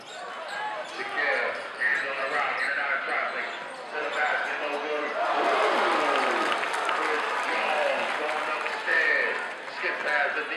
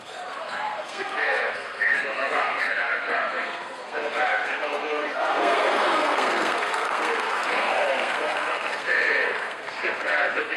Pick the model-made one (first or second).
second